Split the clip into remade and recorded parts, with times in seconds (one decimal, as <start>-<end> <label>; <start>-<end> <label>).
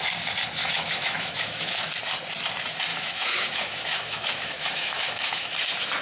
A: 0.0-0.6 recorded; 0.6-1.9 remade; 1.9-2.9 recorded; 2.9-5.5 remade; 5.5-6.0 recorded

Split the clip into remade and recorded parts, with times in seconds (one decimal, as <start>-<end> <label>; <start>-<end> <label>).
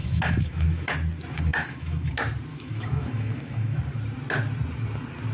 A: 0.0-0.9 remade; 0.9-1.5 recorded; 1.5-2.1 remade; 2.1-2.5 recorded; 2.5-3.8 remade; 3.8-5.3 recorded